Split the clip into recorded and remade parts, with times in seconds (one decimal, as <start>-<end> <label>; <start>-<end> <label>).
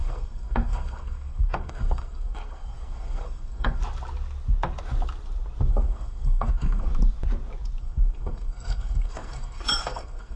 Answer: 0.0-3.8 remade; 3.8-5.7 recorded; 5.7-6.9 remade; 6.9-7.8 recorded; 7.8-10.4 remade